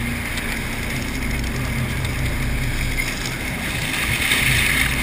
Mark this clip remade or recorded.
recorded